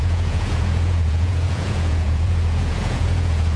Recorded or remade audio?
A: remade